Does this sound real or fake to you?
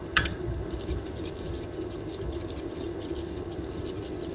fake